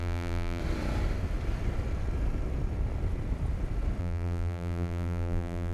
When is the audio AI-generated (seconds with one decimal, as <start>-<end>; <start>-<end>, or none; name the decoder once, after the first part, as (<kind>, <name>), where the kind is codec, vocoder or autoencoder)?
0.0-0.6 (vocoder, BigVGAN v2); 4.0-5.7